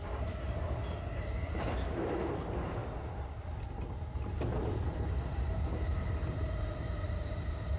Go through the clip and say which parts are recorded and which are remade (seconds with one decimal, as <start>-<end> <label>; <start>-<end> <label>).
0.0-7.8 recorded